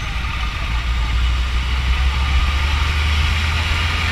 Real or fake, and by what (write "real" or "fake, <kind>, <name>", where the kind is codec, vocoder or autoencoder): real